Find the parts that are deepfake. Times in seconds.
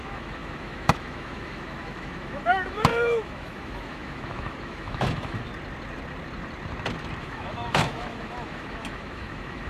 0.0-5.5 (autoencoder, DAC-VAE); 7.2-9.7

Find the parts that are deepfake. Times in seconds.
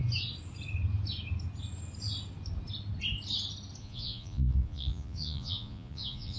3.8-6.4 (vocoder, Vocos)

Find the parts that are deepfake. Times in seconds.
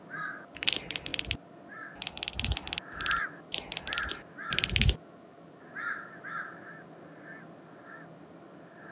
none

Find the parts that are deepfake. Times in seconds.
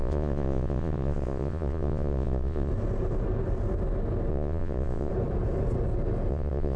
0.0-2.7 (vocoder, Vocos); 4.3-5.1; 6.3-6.8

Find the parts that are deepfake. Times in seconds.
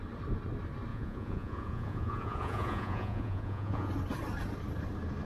0.9-3.9 (vocoder, Vocos)